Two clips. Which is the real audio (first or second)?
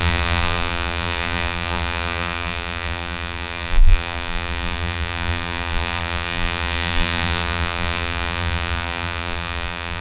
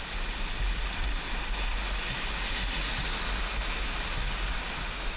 second